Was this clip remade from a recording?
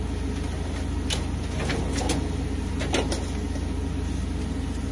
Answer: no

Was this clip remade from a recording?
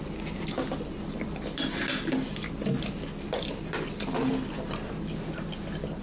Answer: no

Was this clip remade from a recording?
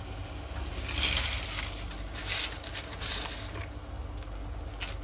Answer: no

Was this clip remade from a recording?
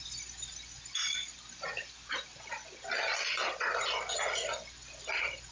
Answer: no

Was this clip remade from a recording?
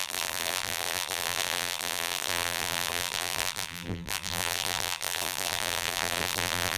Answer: yes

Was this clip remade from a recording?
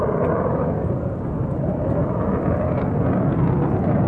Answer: no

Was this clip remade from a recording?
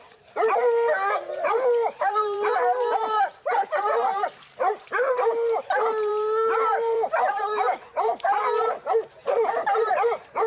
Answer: yes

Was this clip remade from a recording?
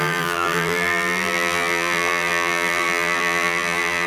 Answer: yes